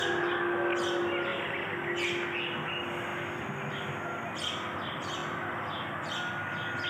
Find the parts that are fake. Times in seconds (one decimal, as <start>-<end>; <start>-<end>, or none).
none

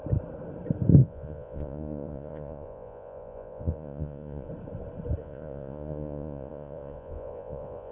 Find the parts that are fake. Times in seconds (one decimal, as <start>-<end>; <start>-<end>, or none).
1.0-4.5; 5.2-7.9

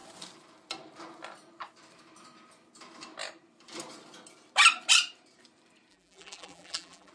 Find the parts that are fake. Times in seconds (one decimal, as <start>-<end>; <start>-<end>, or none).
5.9-7.1

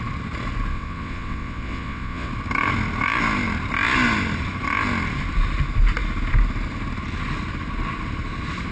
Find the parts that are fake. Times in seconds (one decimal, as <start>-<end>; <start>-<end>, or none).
0.7-2.3

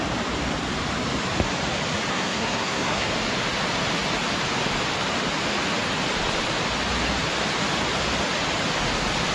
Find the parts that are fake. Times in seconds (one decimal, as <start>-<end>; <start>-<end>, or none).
2.1-3.1

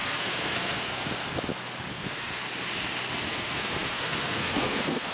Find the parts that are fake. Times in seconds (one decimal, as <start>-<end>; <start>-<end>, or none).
0.0-1.0; 1.9-2.4; 3.3-5.1